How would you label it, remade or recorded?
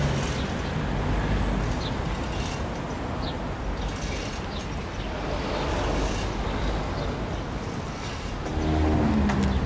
recorded